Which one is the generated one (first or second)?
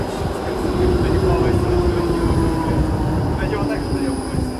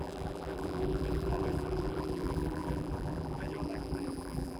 second